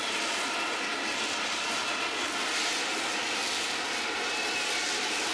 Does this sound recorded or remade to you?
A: recorded